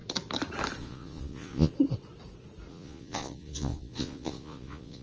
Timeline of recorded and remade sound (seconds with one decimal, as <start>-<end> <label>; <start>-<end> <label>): 0.0-0.8 recorded; 0.8-1.7 remade; 1.7-2.7 recorded; 2.7-5.0 remade

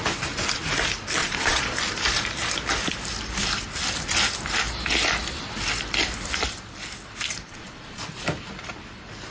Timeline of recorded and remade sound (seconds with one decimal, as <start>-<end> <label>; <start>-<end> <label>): 0.0-1.2 recorded; 1.2-1.7 remade; 1.7-7.3 recorded; 7.3-8.2 remade; 8.2-9.3 recorded

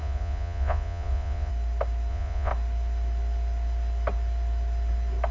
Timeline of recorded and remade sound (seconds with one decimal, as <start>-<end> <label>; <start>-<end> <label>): 0.0-1.5 remade; 1.5-2.1 recorded; 2.1-2.5 remade; 2.5-5.3 recorded

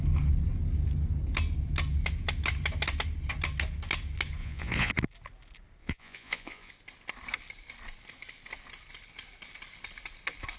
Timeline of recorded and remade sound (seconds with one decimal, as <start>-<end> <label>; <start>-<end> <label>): 0.0-4.4 recorded; 4.4-4.9 remade; 4.9-5.8 recorded; 5.8-6.7 remade; 6.7-10.6 recorded

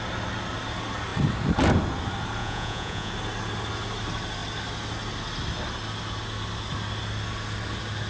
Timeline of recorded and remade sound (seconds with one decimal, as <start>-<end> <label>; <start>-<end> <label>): 0.0-2.4 recorded; 2.4-3.1 remade; 3.1-8.1 recorded